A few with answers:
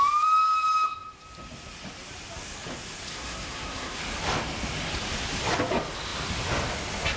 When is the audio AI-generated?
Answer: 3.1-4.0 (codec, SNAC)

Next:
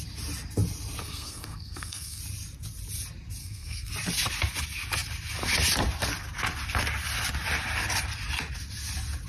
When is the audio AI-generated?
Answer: 1.0-2.2 (codec, SNAC); 3.4-3.9

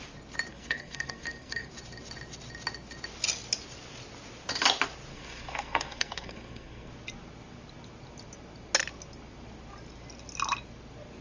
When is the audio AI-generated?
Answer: 0.5-1.7 (codec, SNAC); 5.1-6.9

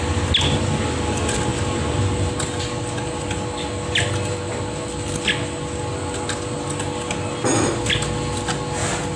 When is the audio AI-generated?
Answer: none

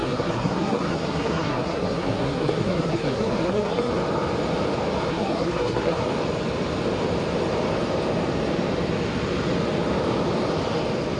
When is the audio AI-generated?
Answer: 0.0-3.9 (codec, SNAC); 5.1-6.0

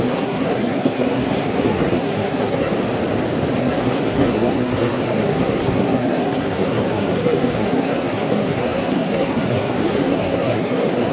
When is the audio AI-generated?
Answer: 0.0-2.7 (codec, SNAC); 3.6-11.1

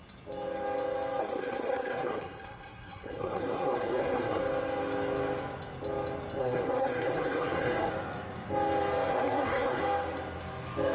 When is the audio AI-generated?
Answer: 1.2-4.4 (codec, SNAC); 6.4-7.9; 9.1-9.8